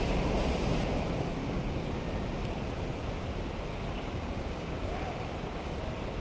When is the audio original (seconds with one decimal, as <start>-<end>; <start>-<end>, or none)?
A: 0.0-1.3; 1.9-3.7; 5.8-6.2

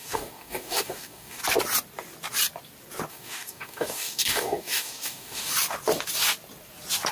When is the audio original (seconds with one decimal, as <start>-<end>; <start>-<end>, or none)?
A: 1.4-3.1; 5.5-7.1

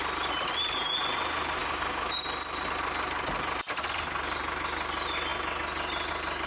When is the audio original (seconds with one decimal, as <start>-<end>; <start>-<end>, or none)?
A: 0.0-1.6; 2.1-6.5

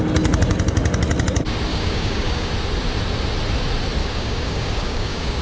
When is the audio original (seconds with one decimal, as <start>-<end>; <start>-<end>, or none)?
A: 0.0-1.7; 2.5-4.0

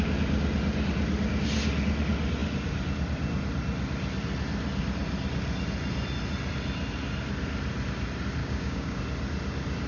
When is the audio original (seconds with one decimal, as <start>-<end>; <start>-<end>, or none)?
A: 0.0-8.4; 9.0-9.9

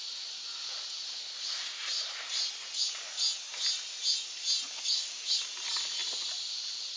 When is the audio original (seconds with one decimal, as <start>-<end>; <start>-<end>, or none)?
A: 0.0-4.7; 5.5-7.0

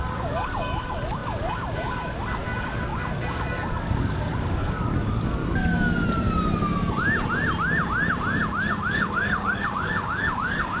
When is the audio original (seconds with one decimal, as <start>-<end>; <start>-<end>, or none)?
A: 5.4-8.7

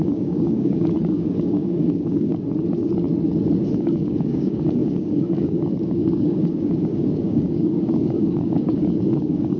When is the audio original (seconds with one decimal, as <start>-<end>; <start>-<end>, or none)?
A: 2.3-3.7